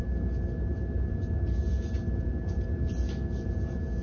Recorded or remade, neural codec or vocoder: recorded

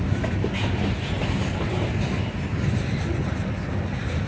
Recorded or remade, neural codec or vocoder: recorded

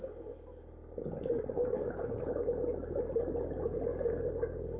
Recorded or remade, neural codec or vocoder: recorded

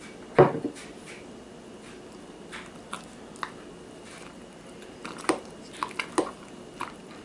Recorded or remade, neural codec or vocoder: recorded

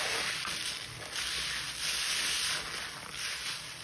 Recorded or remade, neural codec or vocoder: recorded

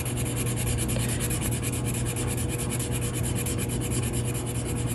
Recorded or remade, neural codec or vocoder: recorded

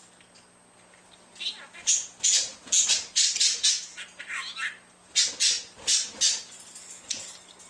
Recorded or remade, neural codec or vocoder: recorded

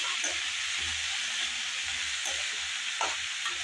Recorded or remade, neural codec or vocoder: recorded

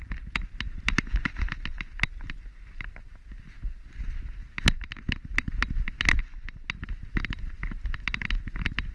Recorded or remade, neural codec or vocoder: recorded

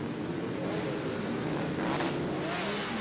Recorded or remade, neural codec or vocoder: recorded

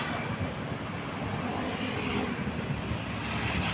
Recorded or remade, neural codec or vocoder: recorded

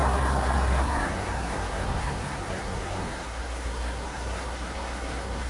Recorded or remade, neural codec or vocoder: remade, codec, SNAC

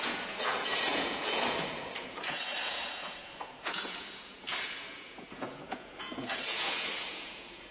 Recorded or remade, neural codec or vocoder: remade, vocoder, Vocos